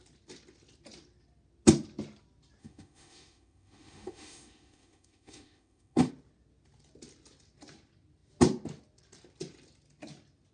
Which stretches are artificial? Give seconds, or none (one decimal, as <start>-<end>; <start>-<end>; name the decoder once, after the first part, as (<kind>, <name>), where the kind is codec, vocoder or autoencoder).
2.6-6.1 (autoencoder, DAC-VAE)